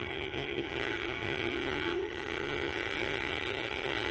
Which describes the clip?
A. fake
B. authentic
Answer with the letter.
A